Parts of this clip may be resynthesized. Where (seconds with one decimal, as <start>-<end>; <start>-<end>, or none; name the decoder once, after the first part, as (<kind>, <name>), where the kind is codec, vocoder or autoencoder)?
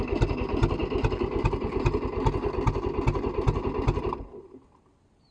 none